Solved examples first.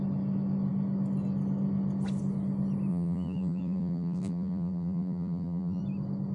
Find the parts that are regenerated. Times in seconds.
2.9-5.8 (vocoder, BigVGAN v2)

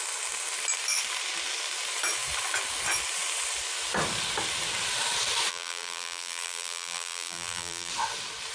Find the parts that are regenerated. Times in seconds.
5.5-7.9 (vocoder, BigVGAN v2)

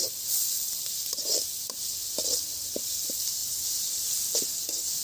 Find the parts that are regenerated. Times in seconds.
none